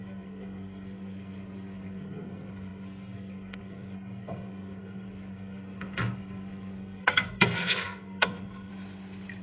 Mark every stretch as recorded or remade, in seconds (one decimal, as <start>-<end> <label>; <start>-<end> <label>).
0.0-8.7 remade; 8.7-9.4 recorded

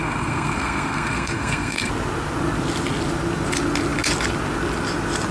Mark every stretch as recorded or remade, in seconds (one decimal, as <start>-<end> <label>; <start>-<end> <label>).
0.0-1.9 remade; 1.9-5.3 recorded